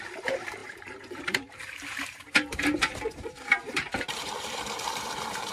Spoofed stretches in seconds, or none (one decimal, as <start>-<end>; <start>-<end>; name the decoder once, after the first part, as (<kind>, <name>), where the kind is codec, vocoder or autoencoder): 0.0-5.5 (vocoder, BigVGAN v2)